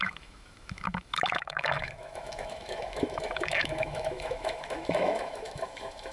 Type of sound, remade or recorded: remade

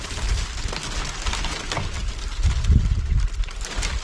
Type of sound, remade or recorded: recorded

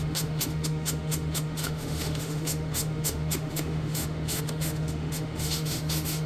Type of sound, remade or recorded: remade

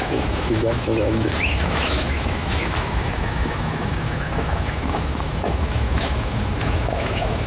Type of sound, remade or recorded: remade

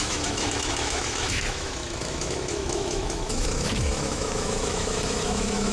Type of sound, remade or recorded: remade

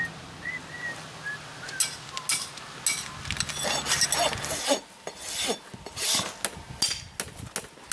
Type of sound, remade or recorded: recorded